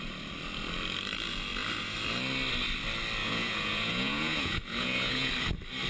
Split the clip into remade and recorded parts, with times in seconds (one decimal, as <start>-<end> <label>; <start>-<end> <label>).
0.0-3.2 recorded; 3.2-5.3 remade; 5.3-5.9 recorded